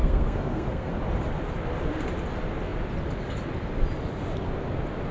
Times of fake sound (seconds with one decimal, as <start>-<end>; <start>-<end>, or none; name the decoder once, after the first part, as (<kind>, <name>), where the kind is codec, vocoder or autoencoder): 0.0-0.9 (codec, SNAC)